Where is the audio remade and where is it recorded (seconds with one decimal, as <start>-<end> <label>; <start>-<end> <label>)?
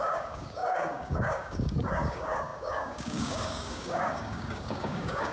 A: 0.0-5.3 remade